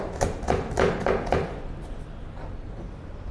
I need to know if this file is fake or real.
real